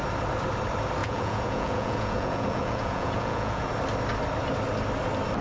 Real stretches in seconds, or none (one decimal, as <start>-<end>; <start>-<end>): 0.0-1.0; 3.7-5.4